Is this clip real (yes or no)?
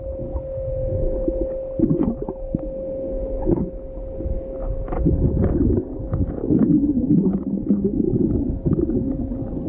yes